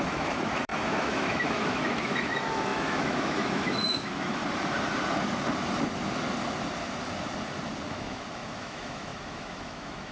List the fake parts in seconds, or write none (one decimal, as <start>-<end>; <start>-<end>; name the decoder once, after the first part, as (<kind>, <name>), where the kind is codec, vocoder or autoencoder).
0.0-4.4 (autoencoder, DAC-VAE); 7.9-10.1